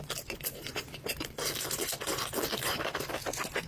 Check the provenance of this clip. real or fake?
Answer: fake